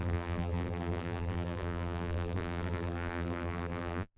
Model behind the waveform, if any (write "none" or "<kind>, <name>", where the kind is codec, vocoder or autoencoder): vocoder, BigVGAN v2